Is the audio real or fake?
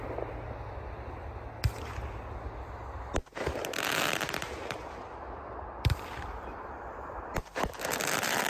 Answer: real